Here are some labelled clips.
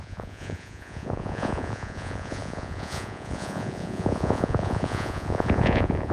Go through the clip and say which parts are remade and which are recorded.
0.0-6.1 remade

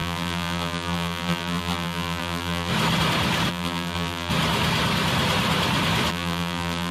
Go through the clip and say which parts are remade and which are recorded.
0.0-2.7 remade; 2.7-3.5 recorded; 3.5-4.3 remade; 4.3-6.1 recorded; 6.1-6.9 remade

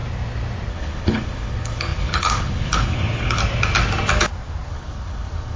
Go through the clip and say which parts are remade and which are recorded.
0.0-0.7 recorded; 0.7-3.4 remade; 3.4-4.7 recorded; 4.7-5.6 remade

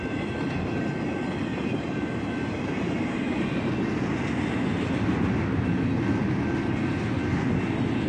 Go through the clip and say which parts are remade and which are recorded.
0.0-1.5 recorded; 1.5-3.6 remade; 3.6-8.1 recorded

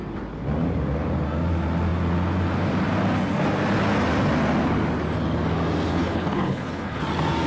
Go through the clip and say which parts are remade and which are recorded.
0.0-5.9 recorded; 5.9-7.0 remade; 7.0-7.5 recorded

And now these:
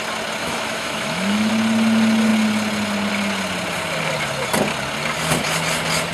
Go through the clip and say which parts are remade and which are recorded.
0.0-0.4 recorded; 0.4-1.5 remade; 1.5-6.1 recorded

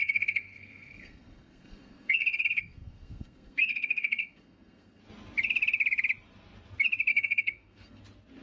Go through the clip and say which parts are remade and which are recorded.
0.0-5.0 remade; 5.0-7.1 recorded; 7.1-8.0 remade; 8.0-8.4 recorded

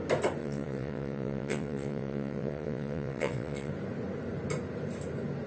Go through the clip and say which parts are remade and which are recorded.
0.0-0.4 recorded; 0.4-3.7 remade; 3.7-5.5 recorded